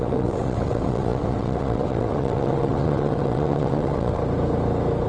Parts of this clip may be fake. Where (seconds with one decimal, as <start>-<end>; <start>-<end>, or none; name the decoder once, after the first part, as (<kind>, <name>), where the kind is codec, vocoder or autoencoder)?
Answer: 0.0-4.2 (vocoder, WaveNeXt)